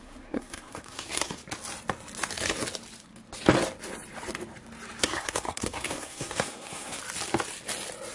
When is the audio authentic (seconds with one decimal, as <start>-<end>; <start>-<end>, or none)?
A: 1.4-5.0; 7.0-8.1